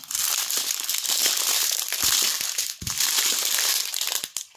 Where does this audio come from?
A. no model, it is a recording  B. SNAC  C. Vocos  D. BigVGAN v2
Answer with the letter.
A